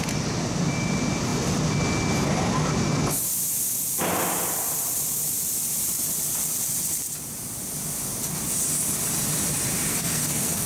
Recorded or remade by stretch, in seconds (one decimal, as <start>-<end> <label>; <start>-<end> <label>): 0.0-9.9 recorded; 9.9-10.7 remade